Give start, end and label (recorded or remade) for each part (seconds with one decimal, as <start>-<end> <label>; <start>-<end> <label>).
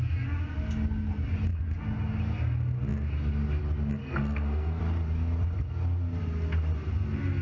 0.0-4.0 recorded; 4.0-4.8 remade; 4.8-7.4 recorded